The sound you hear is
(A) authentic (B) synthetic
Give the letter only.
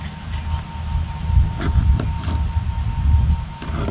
A